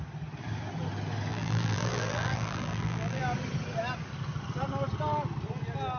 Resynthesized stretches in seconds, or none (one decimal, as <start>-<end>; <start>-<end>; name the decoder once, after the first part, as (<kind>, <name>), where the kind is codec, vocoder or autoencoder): 1.3-3.2 (vocoder, BigVGAN v2)